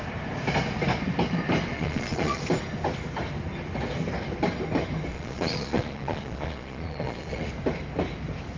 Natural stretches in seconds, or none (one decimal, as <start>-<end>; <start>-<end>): 0.0-1.7; 2.4-5.1; 7.5-8.6